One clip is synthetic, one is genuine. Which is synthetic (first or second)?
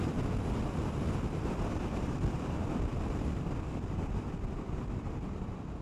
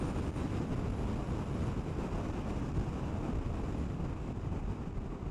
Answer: first